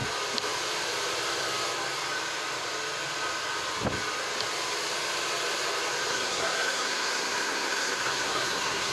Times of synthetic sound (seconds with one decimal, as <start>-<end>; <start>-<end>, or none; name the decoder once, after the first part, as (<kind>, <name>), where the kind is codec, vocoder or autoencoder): 6.1-8.9 (codec, SNAC)